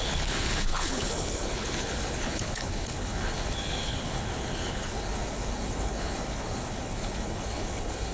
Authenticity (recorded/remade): remade